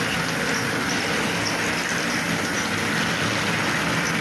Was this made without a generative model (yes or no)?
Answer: yes